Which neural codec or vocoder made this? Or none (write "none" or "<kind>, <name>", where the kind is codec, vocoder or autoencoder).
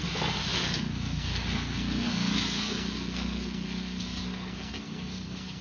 codec, SNAC